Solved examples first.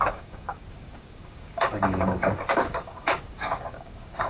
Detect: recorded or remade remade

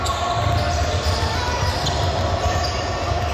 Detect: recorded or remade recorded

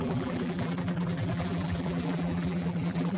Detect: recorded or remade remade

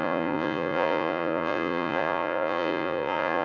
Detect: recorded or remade remade